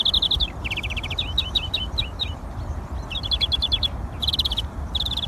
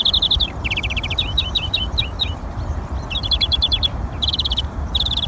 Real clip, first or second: first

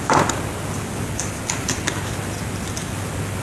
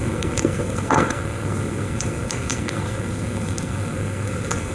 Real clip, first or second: first